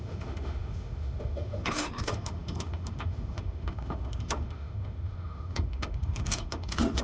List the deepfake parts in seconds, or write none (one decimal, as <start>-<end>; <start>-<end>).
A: 0.0-7.0